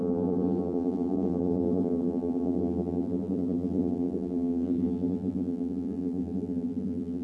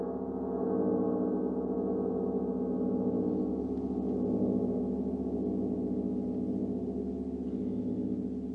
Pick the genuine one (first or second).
second